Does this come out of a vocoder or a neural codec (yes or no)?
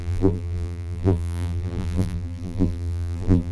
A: yes